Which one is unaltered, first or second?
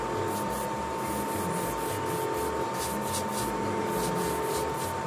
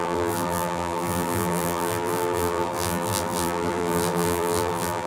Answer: first